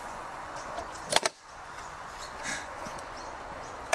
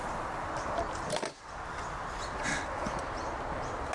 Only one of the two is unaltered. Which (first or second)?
second